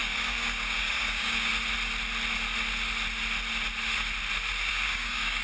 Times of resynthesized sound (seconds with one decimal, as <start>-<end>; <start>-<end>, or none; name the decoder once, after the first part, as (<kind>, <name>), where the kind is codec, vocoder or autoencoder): 0.0-1.5 (codec, DAC); 4.7-5.4